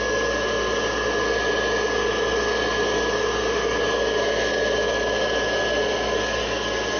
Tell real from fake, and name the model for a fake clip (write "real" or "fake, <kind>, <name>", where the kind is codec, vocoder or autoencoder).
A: real